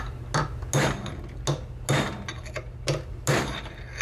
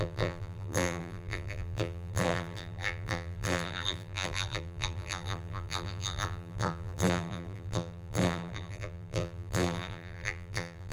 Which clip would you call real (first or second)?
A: first